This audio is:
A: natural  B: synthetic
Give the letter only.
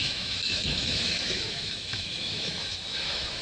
B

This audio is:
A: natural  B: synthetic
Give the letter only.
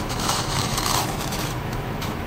B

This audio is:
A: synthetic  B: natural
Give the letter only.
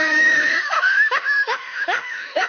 A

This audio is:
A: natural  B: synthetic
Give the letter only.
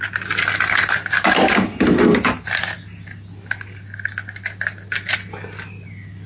A